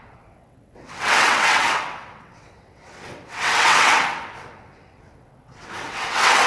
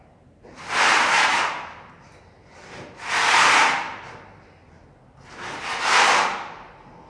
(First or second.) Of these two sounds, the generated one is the first